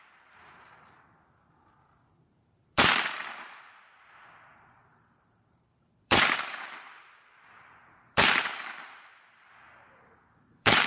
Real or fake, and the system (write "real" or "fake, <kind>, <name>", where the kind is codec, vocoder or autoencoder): fake, vocoder, BigVGAN v2